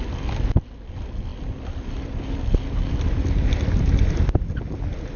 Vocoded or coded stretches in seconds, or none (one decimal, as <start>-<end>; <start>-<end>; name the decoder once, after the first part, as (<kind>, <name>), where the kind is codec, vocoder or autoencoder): 1.3-2.3 (vocoder, BigVGAN v2)